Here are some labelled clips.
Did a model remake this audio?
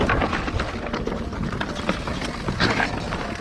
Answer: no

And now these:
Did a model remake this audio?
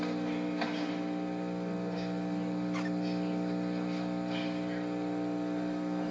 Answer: no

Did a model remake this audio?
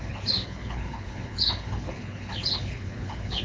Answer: yes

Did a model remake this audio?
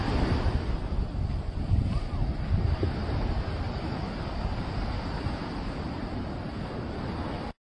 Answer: no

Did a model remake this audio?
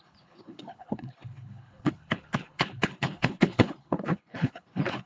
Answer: yes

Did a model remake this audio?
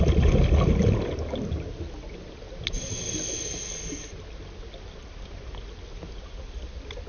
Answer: no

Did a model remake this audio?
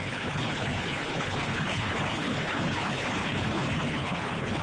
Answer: yes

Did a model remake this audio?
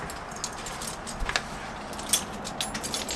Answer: no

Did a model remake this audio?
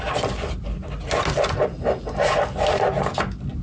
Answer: no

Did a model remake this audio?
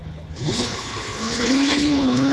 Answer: yes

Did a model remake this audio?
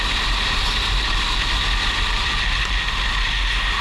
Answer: no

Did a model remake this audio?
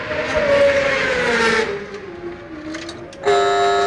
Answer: no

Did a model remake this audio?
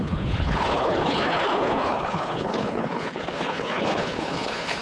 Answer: yes